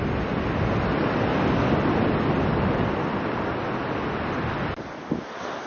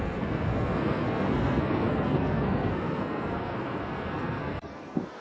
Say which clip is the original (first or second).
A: first